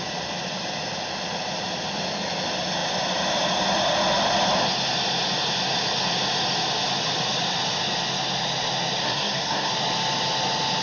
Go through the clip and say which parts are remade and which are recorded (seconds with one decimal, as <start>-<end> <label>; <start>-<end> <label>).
0.0-9.0 recorded; 9.0-9.7 remade; 9.7-10.8 recorded